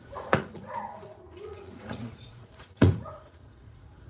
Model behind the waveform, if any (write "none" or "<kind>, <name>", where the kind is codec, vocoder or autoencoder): vocoder, Vocos